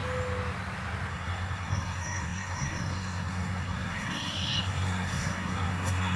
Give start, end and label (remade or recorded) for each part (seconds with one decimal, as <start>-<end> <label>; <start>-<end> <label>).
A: 0.0-1.1 recorded; 1.1-6.2 remade